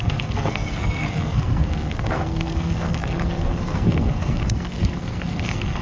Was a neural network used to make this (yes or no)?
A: yes